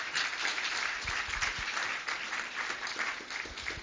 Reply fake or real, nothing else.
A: fake